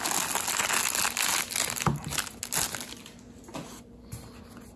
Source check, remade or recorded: recorded